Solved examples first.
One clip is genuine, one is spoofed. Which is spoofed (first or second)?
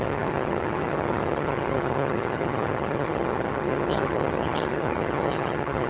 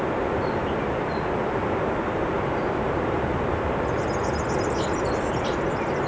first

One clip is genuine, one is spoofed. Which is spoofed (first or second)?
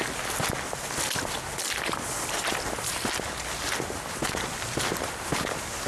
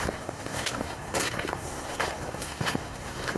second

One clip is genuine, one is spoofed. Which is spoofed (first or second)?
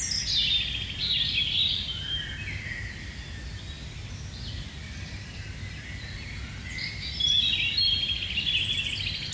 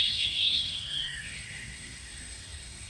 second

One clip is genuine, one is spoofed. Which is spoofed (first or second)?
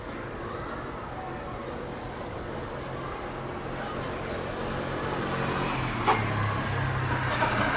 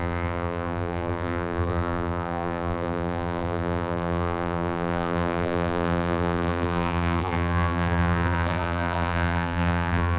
second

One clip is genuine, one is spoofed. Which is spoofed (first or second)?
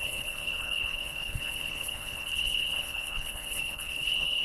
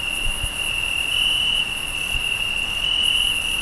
first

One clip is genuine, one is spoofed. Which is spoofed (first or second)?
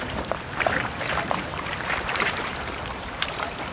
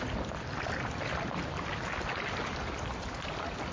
first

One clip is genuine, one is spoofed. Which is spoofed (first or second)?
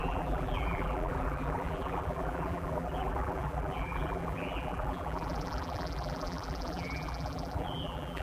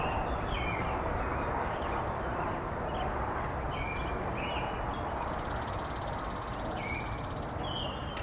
first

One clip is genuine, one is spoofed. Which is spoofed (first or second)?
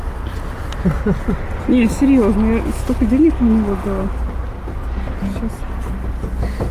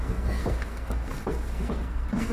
second